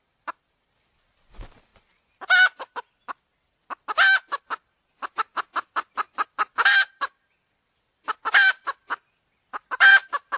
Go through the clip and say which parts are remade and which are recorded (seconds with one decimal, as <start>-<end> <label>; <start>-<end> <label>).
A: 0.0-1.7 remade; 1.7-4.4 recorded; 4.4-8.8 remade; 8.8-9.4 recorded; 9.4-10.4 remade